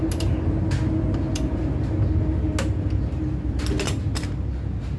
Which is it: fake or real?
real